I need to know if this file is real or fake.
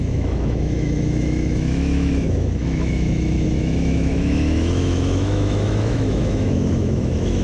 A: fake